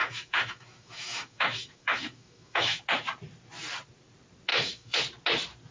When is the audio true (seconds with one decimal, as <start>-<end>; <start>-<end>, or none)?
2.8-4.5; 5.0-5.7